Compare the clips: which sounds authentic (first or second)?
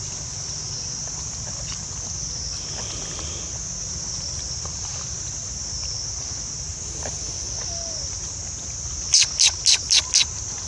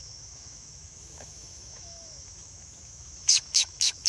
first